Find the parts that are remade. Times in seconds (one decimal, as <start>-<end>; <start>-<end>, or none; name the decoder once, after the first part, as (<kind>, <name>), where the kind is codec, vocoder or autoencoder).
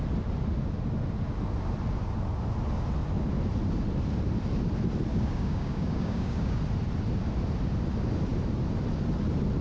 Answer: 5.1-6.6 (codec, DAC)